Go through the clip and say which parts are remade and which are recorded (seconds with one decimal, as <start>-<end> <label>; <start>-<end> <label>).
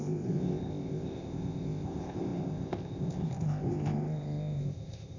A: 0.0-5.2 remade